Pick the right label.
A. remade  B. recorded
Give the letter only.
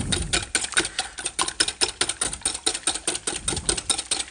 B